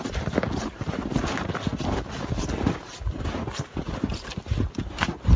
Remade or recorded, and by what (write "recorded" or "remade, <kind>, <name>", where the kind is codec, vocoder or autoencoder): recorded